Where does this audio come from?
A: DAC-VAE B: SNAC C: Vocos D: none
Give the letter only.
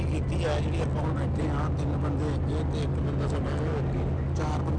D